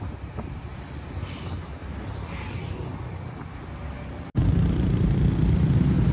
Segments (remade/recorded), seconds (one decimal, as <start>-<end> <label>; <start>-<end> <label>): 0.0-0.7 remade; 0.7-1.4 recorded; 1.4-1.8 remade; 1.8-4.4 recorded; 4.4-6.1 remade